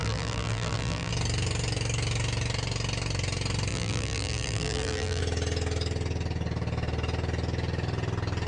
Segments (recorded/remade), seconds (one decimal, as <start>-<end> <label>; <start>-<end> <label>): 0.0-1.1 remade; 1.1-3.7 recorded; 3.7-5.2 remade; 5.2-8.5 recorded